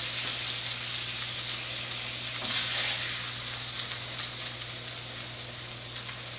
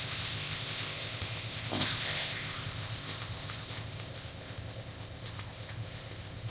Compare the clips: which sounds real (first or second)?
first